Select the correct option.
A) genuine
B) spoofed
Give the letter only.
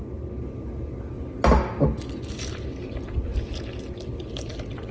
A